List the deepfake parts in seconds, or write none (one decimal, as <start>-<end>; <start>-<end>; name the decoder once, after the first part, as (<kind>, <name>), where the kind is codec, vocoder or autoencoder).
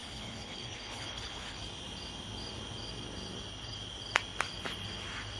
0.0-1.6 (codec, HILCodec)